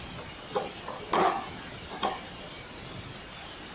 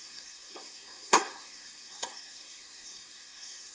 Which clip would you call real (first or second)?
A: first